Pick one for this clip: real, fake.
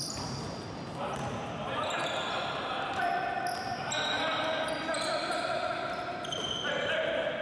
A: real